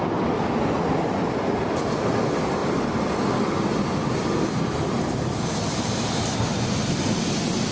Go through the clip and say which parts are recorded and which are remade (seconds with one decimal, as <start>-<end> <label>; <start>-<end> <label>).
0.0-6.5 recorded; 6.5-7.7 remade